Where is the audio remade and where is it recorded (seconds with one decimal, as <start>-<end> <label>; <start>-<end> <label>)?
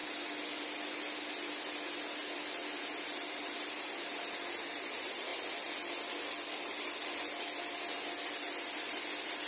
0.0-9.5 recorded